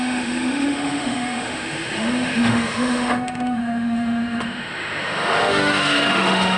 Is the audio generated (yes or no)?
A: yes